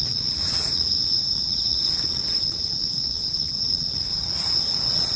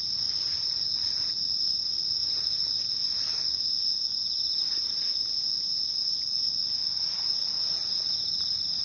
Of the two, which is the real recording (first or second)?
second